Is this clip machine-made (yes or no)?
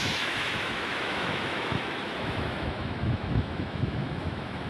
yes